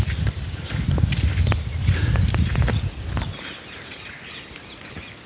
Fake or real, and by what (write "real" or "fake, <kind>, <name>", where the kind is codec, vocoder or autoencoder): real